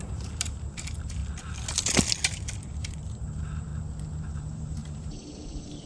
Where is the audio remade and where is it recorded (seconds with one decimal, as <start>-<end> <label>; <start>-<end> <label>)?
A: 0.0-1.2 remade; 1.2-2.6 recorded; 2.6-3.7 remade; 3.7-4.3 recorded; 4.3-5.9 remade